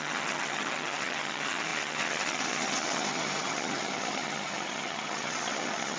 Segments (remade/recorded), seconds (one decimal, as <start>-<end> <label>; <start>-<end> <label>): 0.0-6.0 remade